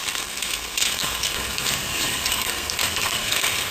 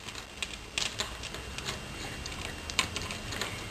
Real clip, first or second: second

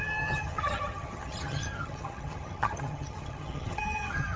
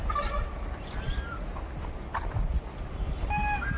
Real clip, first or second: second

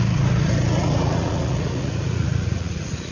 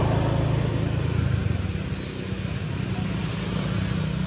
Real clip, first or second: second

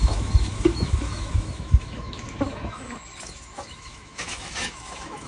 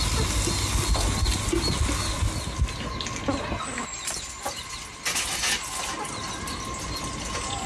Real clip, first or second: second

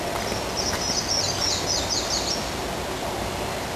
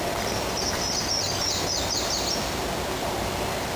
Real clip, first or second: first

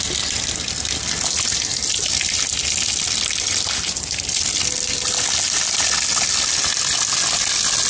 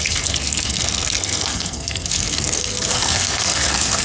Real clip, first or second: first